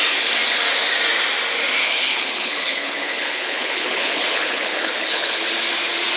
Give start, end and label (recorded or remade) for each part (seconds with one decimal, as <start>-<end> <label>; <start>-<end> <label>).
0.0-1.8 recorded; 1.8-5.5 remade; 5.5-6.2 recorded